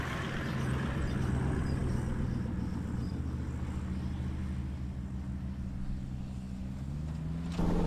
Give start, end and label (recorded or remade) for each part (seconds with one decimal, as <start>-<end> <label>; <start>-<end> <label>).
0.0-7.9 recorded